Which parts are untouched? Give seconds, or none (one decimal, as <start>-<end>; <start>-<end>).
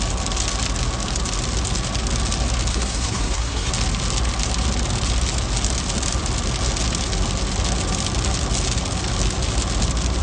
0.0-2.7; 3.7-10.2